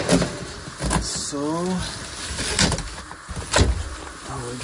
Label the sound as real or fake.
real